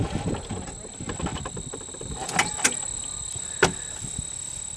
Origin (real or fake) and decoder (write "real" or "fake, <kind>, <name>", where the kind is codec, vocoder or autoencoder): real